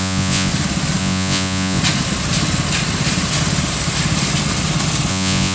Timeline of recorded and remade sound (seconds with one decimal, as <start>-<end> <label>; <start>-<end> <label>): 0.0-0.5 remade; 0.5-1.0 recorded; 1.0-1.8 remade; 1.8-5.1 recorded; 5.1-5.5 remade